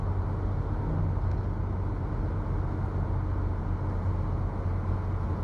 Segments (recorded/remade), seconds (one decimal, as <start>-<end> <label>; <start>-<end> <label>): 0.0-5.4 recorded